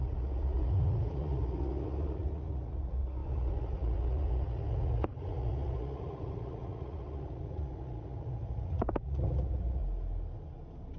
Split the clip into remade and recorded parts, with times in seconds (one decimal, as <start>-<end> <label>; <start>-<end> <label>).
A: 0.0-9.8 remade; 9.8-11.0 recorded